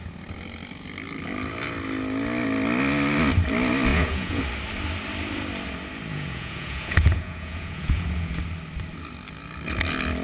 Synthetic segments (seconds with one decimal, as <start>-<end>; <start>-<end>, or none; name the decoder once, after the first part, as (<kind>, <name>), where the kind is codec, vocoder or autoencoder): 3.9-4.4 (vocoder, Vocos); 6.1-8.4